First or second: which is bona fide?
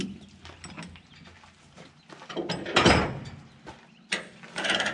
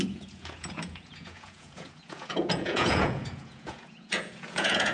first